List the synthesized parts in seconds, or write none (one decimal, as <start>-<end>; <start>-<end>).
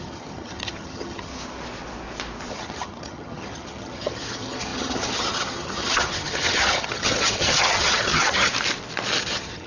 0.0-1.3; 2.5-8.5; 9.2-9.7